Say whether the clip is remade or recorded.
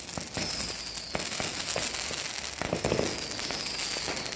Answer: recorded